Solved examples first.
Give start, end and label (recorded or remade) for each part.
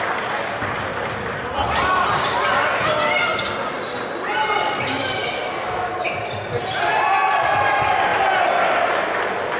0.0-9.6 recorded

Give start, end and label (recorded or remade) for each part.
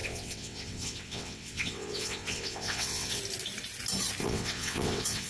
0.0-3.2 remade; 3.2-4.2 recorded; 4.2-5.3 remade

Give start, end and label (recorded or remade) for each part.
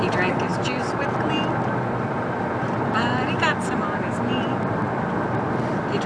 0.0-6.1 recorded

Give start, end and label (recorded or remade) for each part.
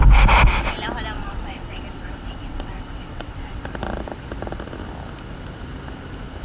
0.0-1.2 recorded; 1.2-3.6 remade; 3.6-6.4 recorded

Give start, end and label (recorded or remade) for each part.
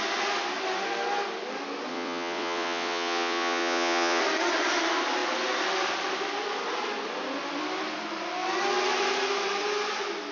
0.0-1.9 recorded; 1.9-4.2 remade; 4.2-10.3 recorded